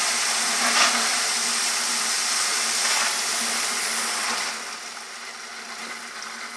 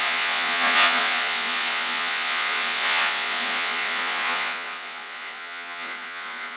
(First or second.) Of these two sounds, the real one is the first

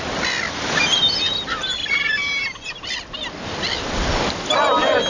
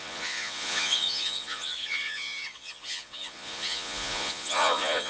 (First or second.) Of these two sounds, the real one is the first